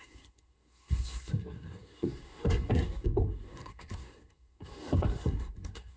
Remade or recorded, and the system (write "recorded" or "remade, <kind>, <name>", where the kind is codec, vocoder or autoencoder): remade, codec, SNAC